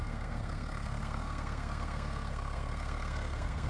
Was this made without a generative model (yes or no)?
no